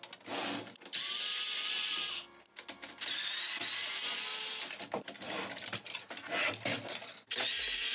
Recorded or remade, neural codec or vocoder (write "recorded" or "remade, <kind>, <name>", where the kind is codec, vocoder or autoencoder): recorded